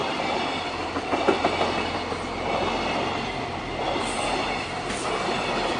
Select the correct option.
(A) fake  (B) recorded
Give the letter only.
B